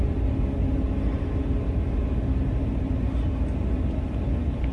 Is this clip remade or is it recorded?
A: recorded